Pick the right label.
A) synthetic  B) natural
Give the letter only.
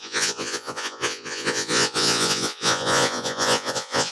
A